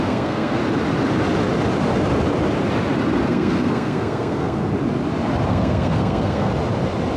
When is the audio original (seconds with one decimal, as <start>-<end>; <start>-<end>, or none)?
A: 0.6-3.3; 4.6-5.5; 6.5-7.2